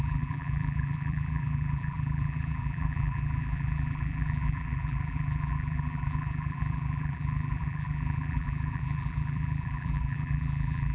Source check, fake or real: fake